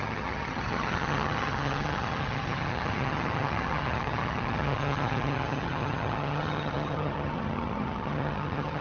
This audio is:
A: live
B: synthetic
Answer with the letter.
B